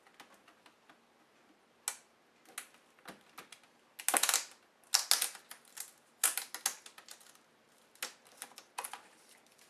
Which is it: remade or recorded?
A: recorded